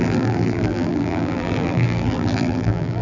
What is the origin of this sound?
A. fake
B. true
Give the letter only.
A